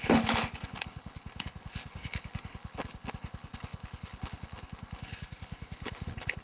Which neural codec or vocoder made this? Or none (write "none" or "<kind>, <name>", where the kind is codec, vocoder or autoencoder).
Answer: codec, HILCodec